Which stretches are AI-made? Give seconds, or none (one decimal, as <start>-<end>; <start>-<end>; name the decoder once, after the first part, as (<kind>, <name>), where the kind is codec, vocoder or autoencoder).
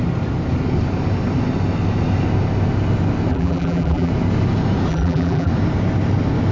3.3-4.1 (vocoder, BigVGAN v2); 4.9-5.5